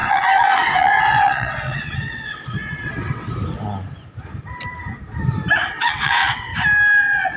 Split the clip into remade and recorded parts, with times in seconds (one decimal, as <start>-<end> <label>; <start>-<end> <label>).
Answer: 0.0-3.3 remade; 3.3-5.7 recorded; 5.7-6.5 remade; 6.5-7.0 recorded; 7.0-7.4 remade